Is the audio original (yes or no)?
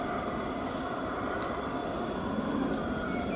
yes